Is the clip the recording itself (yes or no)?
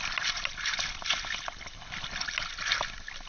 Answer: yes